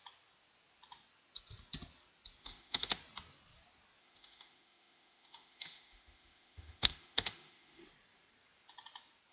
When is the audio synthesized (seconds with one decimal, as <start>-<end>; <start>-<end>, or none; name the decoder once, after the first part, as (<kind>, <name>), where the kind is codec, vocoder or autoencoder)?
2.4-3.0 (autoencoder, DAC-VAE); 4.0-7.8

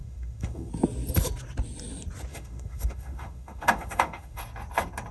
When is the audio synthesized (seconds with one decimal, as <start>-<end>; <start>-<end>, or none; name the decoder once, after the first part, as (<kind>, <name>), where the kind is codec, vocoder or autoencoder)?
0.0-0.7 (autoencoder, DAC-VAE); 2.3-4.4

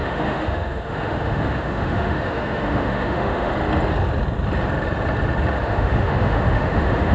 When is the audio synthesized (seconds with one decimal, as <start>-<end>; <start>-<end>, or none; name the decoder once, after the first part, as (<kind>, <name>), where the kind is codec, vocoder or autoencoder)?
0.0-3.5 (autoencoder, DAC-VAE); 5.6-7.1

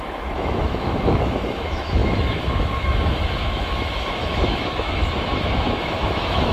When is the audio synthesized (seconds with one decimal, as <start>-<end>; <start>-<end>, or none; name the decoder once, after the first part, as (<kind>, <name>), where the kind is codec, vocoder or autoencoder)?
0.0-6.5 (autoencoder, DAC-VAE)

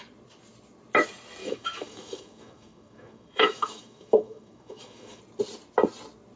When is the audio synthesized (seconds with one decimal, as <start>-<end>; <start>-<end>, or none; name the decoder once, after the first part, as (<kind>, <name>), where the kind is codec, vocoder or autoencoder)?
1.4-5.2 (autoencoder, DAC-VAE)

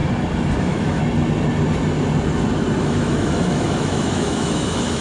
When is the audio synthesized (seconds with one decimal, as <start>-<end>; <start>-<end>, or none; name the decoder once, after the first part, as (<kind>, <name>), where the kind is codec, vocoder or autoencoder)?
0.6-1.0 (autoencoder, DAC-VAE); 2.8-5.0